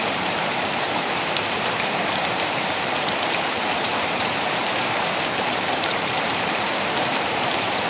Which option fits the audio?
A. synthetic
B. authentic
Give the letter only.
A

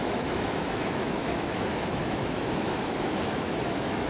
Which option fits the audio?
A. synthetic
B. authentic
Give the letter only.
A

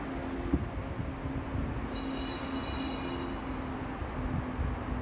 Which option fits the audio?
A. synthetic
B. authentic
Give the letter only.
B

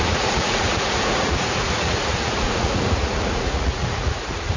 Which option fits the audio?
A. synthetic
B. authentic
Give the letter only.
A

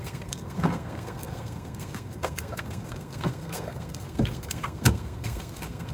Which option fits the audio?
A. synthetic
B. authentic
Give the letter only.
A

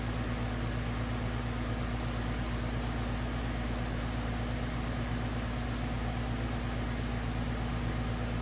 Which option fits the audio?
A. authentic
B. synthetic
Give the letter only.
A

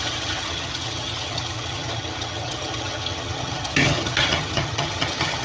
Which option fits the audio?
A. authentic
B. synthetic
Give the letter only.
B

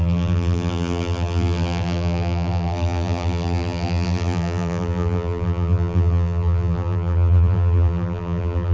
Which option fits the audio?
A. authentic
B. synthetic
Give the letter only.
B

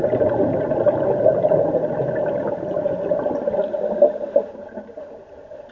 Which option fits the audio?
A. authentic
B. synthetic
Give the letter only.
A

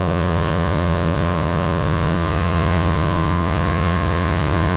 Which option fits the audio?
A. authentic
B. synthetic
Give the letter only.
B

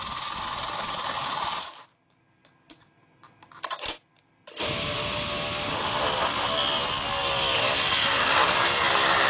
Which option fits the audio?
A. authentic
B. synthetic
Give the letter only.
A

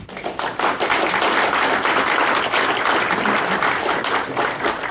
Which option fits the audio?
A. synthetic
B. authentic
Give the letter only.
B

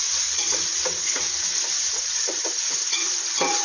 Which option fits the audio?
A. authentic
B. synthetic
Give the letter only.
B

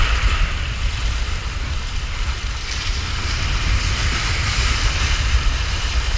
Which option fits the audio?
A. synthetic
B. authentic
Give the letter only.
B